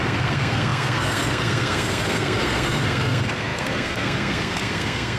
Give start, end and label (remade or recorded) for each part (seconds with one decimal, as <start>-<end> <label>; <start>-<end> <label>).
0.0-5.2 remade